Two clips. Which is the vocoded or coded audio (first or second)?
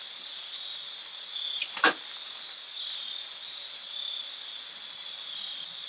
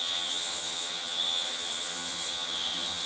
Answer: second